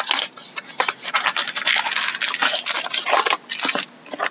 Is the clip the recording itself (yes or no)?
yes